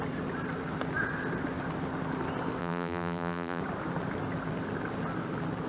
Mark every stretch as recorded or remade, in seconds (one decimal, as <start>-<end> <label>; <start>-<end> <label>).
0.0-2.6 recorded; 2.6-3.6 remade; 3.6-5.7 recorded